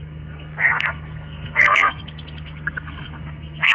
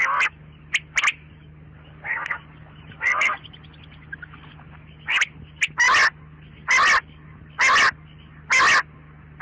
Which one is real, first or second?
second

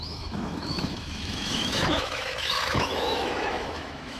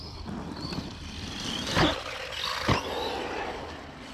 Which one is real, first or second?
second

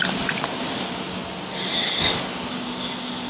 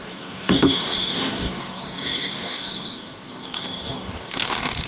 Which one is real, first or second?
first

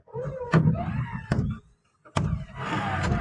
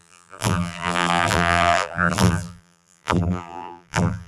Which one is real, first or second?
first